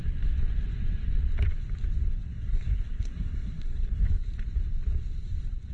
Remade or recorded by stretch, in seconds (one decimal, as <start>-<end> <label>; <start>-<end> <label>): 0.0-2.3 recorded; 2.3-4.1 remade; 4.1-5.7 recorded